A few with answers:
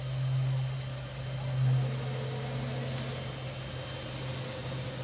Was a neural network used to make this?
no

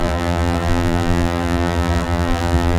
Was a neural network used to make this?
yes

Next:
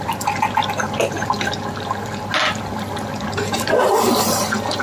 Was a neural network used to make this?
no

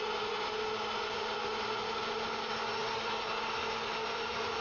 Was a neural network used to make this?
no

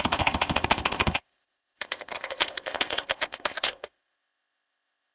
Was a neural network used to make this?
yes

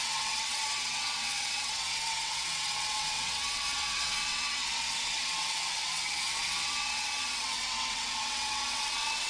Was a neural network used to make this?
yes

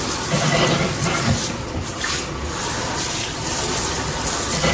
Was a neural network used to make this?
no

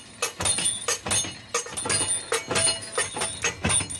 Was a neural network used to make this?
no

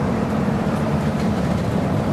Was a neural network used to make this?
yes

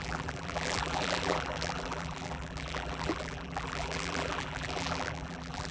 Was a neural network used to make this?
yes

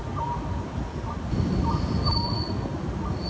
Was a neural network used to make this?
no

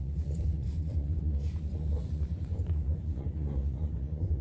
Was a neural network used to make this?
yes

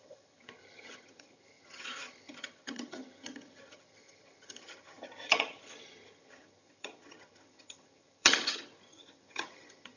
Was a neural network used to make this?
yes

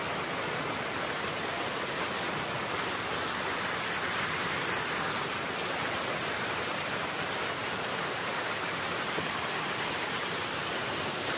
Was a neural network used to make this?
no